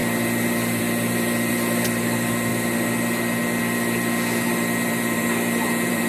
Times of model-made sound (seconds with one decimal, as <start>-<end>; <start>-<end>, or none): 0.0-2.5; 3.6-6.1

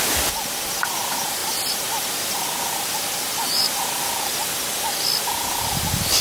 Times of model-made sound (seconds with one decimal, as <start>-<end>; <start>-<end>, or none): 1.4-3.7